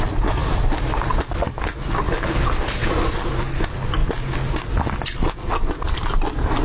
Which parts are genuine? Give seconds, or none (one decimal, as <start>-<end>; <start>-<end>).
0.0-2.0; 2.9-6.6